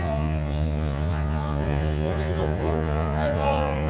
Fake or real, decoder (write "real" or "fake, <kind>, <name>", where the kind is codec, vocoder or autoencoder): fake, vocoder, Vocos